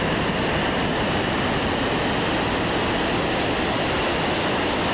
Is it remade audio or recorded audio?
recorded